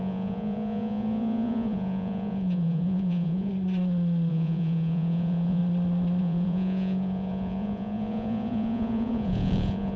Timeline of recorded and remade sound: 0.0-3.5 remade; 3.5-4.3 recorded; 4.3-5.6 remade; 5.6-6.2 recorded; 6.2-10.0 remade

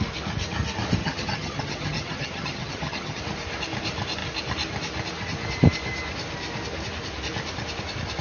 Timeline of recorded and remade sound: 0.0-1.0 recorded; 1.0-3.2 remade; 3.2-8.2 recorded